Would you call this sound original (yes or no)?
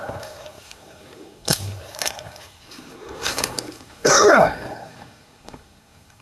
no